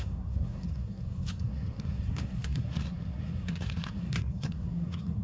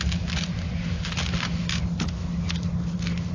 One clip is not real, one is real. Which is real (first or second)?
second